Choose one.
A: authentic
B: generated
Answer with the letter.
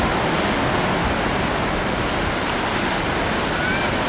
A